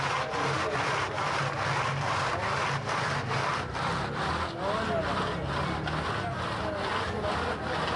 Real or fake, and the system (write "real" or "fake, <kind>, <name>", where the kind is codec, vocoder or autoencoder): real